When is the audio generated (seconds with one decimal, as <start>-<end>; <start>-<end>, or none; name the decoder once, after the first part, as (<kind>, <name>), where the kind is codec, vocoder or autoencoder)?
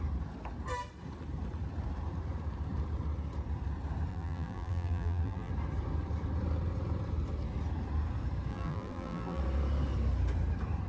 4.1-5.5 (vocoder, BigVGAN v2); 8.5-9.4